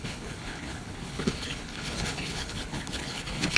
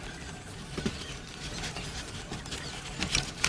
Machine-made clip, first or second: first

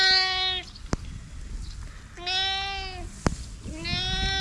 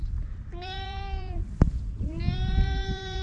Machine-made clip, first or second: second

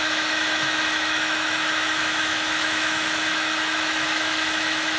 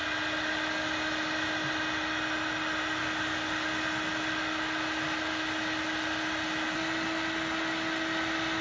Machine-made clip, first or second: first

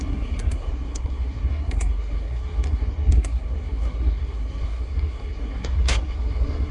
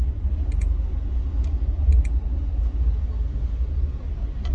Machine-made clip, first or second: first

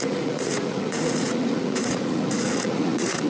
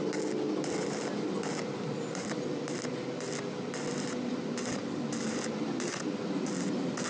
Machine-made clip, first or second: first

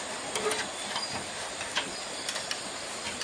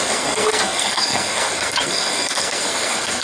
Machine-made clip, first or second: second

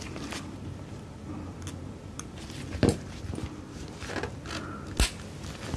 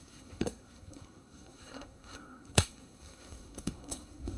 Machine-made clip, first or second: second